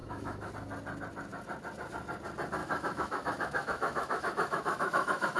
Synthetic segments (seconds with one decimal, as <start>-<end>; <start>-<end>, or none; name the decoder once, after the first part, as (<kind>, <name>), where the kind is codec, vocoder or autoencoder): 0.0-0.5 (autoencoder, DAC-VAE); 2.6-5.4